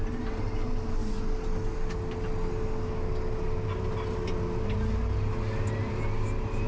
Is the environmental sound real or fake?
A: real